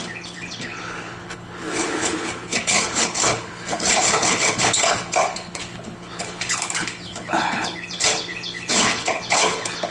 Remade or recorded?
remade